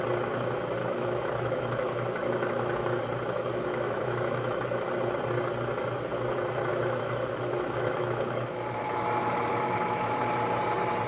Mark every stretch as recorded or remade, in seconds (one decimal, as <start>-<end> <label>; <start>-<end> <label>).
0.0-0.8 recorded; 0.8-3.0 remade; 3.0-3.5 recorded; 3.5-4.9 remade; 4.9-6.7 recorded; 6.7-10.3 remade; 10.3-11.1 recorded